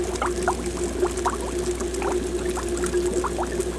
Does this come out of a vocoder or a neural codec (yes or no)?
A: no